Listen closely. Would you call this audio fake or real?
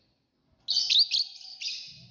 real